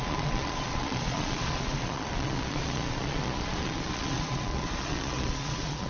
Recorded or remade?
remade